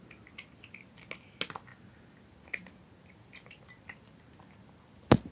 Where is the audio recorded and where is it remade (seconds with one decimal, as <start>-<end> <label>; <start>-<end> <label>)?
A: 0.0-5.3 recorded